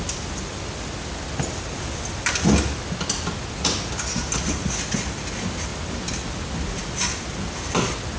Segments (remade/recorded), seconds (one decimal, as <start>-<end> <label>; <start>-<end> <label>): 0.0-8.2 recorded